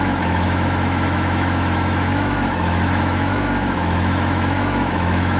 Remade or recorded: remade